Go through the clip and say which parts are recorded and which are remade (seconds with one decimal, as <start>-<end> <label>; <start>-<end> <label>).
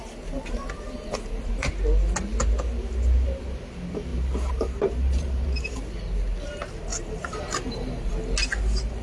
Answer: 0.0-1.7 remade; 1.7-4.1 recorded; 4.1-5.8 remade; 5.8-6.9 recorded; 6.9-8.1 remade; 8.1-9.0 recorded